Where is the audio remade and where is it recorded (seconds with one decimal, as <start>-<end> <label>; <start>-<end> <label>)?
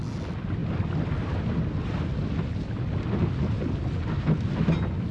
0.0-5.1 recorded